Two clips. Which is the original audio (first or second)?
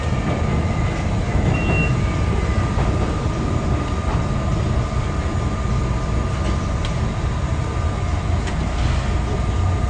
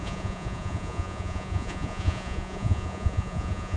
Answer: first